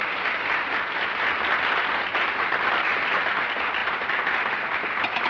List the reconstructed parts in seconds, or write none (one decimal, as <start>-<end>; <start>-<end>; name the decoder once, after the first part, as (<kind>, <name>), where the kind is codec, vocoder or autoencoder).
0.0-0.7 (vocoder, BigVGAN v2); 2.1-3.3; 3.8-5.3